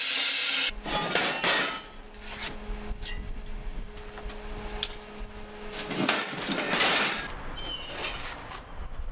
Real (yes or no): yes